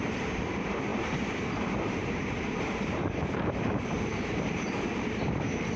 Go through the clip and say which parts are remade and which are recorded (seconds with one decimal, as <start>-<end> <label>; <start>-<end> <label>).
0.0-5.8 remade